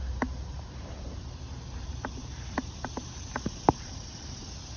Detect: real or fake fake